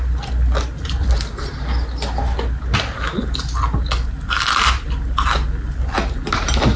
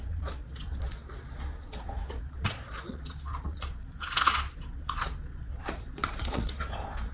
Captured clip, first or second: first